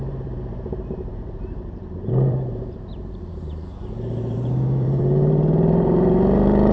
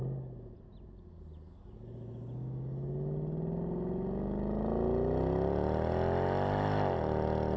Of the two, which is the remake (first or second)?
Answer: first